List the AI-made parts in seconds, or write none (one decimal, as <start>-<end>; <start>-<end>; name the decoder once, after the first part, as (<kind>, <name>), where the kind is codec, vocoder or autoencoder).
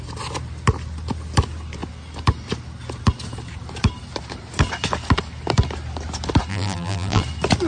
6.5-7.2 (vocoder, BigVGAN v2)